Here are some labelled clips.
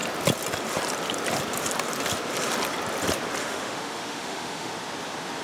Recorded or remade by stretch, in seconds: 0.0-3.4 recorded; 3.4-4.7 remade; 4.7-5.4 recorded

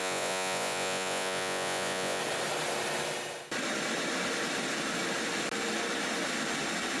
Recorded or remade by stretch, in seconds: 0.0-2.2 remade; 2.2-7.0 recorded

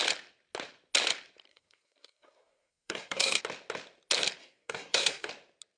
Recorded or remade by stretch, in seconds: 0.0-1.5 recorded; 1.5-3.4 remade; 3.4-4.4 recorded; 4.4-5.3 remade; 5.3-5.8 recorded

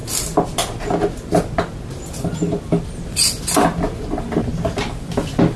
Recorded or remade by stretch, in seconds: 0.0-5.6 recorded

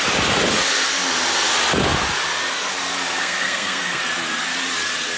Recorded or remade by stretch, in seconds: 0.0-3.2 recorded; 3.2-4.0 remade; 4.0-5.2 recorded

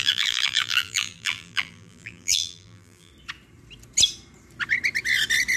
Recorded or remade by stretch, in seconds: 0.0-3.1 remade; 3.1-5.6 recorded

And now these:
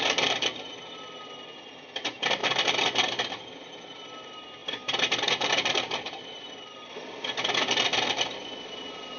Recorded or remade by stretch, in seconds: 0.0-9.2 recorded